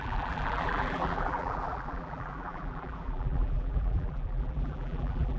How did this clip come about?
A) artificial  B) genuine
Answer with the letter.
A